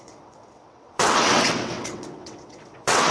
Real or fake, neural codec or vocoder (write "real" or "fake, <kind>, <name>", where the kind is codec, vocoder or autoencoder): fake, vocoder, WaveNeXt